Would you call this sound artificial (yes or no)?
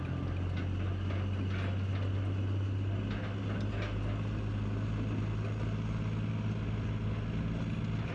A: no